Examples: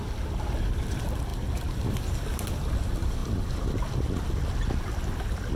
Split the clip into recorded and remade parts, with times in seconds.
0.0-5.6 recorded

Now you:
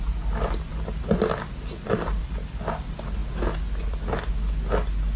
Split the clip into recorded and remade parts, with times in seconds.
0.0-5.2 recorded

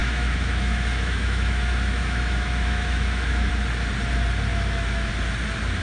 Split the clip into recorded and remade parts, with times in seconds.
0.0-3.5 remade; 3.5-4.5 recorded; 4.5-5.1 remade; 5.1-5.8 recorded

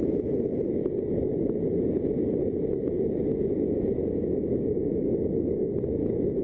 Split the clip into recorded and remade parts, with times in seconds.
0.0-6.4 remade